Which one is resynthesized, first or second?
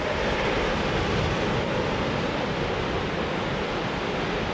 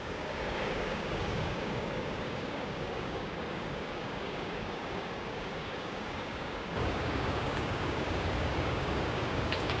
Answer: second